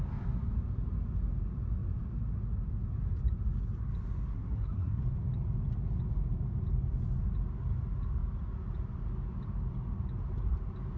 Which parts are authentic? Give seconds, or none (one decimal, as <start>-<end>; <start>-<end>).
0.0-4.3; 5.0-11.0